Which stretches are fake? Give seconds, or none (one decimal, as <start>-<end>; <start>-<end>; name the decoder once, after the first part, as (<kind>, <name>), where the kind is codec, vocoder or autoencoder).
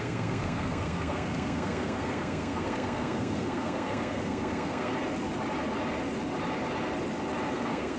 0.0-4.9 (codec, SNAC); 7.5-8.0